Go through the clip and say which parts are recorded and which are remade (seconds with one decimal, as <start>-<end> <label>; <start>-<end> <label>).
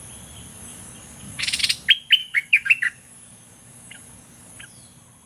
0.0-0.5 recorded; 0.5-1.6 remade; 1.6-2.2 recorded; 2.2-4.5 remade; 4.5-5.3 recorded